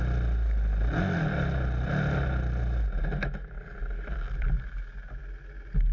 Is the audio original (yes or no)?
yes